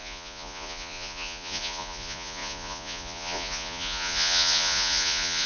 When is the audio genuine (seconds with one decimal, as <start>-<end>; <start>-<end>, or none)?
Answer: none